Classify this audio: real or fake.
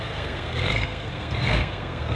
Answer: fake